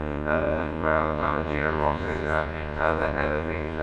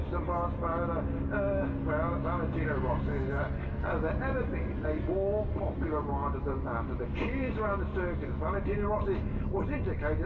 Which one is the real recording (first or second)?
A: second